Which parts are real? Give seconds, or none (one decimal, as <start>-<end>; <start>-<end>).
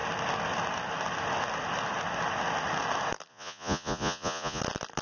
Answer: 0.0-3.3; 4.6-5.0